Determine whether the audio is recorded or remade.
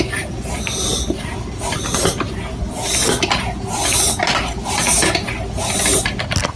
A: recorded